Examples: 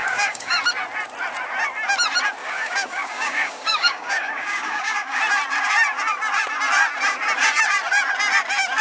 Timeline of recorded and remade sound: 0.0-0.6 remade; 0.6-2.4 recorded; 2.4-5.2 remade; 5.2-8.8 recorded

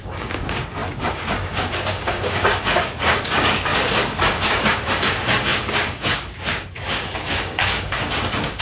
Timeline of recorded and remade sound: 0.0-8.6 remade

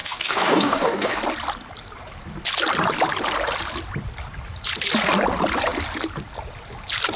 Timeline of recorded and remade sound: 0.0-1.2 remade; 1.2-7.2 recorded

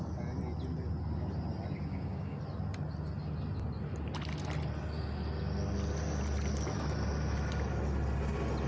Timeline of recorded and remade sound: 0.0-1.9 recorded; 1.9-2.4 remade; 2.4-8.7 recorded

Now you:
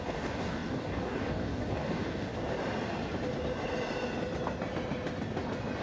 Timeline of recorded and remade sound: 0.0-2.3 remade; 2.3-5.8 recorded

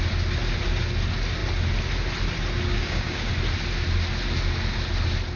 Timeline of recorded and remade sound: 0.0-2.7 recorded; 2.7-3.3 remade; 3.3-5.4 recorded

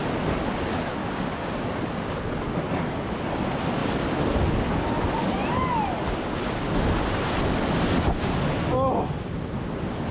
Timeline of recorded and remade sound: 0.0-1.0 recorded; 1.0-1.7 remade; 1.7-10.1 recorded

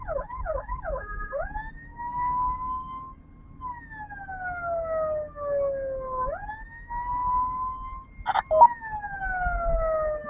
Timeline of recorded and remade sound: 0.0-0.5 recorded; 0.5-1.5 remade; 1.5-1.9 recorded; 1.9-3.2 remade; 3.2-10.3 recorded